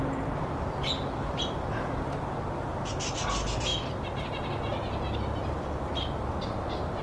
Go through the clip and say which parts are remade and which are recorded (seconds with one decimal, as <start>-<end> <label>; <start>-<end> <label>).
0.0-1.7 remade; 1.7-3.7 recorded; 3.7-4.3 remade; 4.3-4.7 recorded; 4.7-5.9 remade; 5.9-7.0 recorded

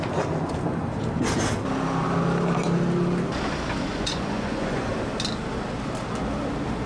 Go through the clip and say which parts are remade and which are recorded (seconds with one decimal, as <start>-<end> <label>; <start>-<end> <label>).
0.0-3.9 recorded; 3.9-4.9 remade; 4.9-6.9 recorded

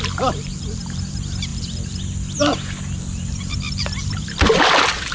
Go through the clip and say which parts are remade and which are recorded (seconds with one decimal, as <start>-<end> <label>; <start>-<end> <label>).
0.0-5.1 recorded

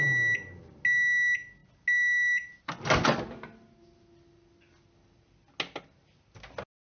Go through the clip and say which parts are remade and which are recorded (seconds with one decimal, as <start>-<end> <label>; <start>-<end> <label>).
0.0-7.0 recorded

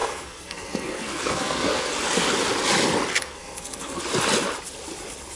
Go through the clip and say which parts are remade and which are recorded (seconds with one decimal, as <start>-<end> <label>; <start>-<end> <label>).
0.0-1.9 remade; 1.9-3.1 recorded; 3.1-4.0 remade; 4.0-5.4 recorded

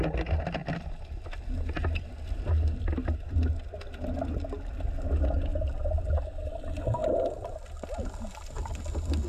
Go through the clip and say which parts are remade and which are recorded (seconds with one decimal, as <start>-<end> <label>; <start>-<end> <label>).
0.0-5.5 recorded; 5.5-6.6 remade; 6.6-9.3 recorded

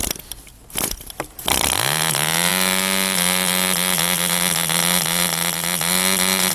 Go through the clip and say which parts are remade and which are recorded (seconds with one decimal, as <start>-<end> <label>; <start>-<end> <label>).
0.0-6.5 recorded

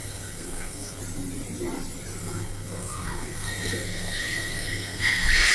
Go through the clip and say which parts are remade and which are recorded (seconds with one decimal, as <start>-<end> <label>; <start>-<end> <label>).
0.0-1.0 remade; 1.0-2.2 recorded; 2.2-5.5 remade